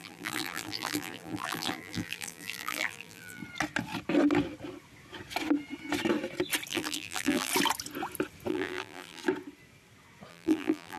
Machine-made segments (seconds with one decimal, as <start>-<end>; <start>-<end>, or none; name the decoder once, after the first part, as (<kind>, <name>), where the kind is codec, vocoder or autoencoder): 0.0-3.4 (vocoder, BigVGAN v2); 6.7-7.5; 8.5-9.2; 10.3-11.0